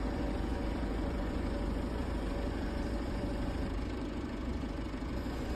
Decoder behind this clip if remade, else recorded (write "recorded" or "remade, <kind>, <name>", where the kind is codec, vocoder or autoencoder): remade, vocoder, Vocos